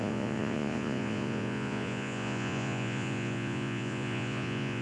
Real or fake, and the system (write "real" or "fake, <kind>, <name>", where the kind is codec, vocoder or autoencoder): fake, vocoder, Vocos